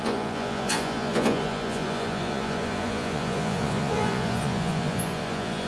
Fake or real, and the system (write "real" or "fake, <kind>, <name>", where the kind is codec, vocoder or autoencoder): fake, vocoder, Vocos